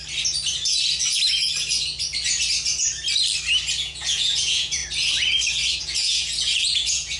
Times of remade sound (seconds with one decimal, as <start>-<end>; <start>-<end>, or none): 3.8-4.8; 5.8-7.2